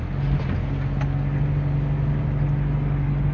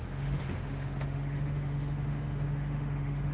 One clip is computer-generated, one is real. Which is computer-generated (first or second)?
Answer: second